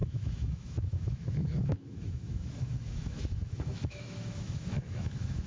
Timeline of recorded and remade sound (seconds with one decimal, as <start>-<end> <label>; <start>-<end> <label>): 0.0-5.5 remade